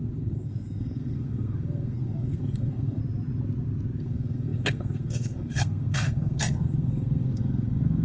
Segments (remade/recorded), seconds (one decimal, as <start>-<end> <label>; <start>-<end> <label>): 0.0-3.0 remade; 3.0-4.0 recorded; 4.0-8.0 remade